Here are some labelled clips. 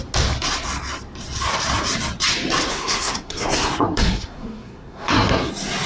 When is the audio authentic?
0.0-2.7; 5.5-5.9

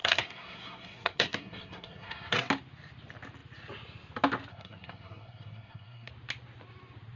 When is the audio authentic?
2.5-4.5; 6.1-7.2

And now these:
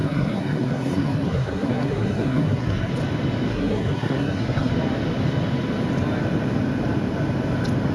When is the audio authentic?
2.9-3.5; 4.7-7.9

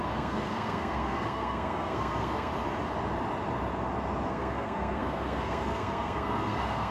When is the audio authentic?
2.5-4.3

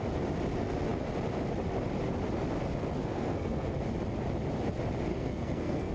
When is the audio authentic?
0.0-3.0; 3.8-5.1

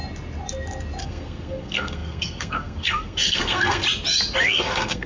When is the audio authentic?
0.0-1.0; 3.8-4.4